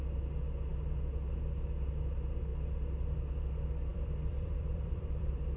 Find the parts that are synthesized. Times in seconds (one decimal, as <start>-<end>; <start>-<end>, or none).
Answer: 3.9-5.6